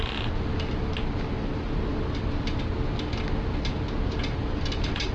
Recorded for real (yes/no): yes